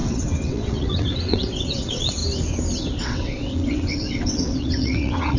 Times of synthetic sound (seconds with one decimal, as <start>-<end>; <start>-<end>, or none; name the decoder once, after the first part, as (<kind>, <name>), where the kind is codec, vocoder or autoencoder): 0.0-2.2 (vocoder, WaveNeXt); 3.0-5.4

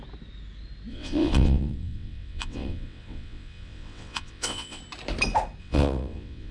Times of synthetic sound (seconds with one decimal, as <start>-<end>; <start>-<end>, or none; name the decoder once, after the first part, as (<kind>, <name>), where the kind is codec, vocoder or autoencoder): 0.9-4.8 (vocoder, WaveNeXt); 5.6-6.5

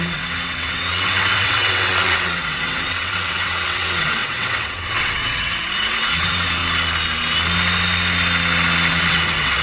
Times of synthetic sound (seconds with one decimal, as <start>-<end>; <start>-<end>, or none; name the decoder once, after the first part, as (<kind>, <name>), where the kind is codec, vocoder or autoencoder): 0.0-6.6 (vocoder, WaveNeXt); 8.9-9.6

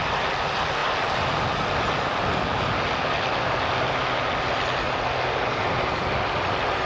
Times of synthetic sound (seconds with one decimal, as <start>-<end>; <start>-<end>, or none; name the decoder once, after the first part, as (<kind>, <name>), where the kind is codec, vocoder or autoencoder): none

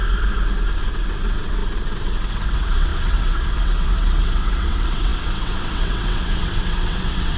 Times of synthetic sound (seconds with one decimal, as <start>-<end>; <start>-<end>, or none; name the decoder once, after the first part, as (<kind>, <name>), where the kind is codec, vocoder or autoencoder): 0.9-1.6 (vocoder, WaveNeXt); 2.3-7.4

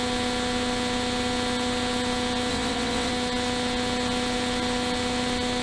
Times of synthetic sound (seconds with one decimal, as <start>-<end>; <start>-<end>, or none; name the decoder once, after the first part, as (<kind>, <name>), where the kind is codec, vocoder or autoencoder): 2.5-3.1 (vocoder, WaveNeXt)

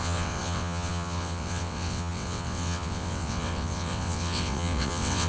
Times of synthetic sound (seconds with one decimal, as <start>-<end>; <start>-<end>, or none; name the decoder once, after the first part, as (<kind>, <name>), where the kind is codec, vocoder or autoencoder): 0.0-5.3 (vocoder, WaveNeXt)